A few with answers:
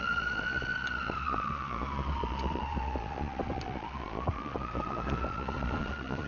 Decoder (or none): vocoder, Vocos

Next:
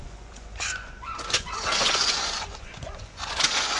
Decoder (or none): vocoder, Vocos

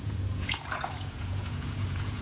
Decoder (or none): vocoder, Vocos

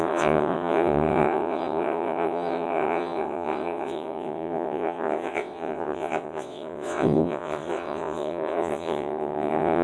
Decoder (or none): vocoder, WaveNeXt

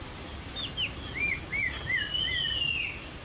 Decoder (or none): none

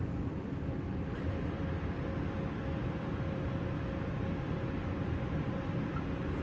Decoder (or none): vocoder, BigVGAN v2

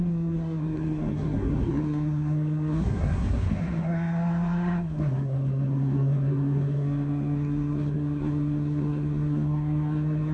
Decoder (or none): codec, SNAC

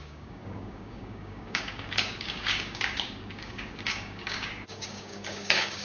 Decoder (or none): codec, DAC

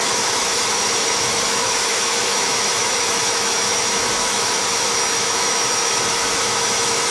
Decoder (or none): autoencoder, DAC-VAE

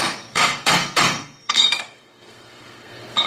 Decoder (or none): codec, SNAC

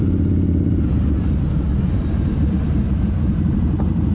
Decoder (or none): vocoder, BigVGAN v2